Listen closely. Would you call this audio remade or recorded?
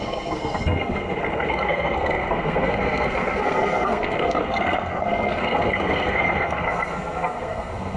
remade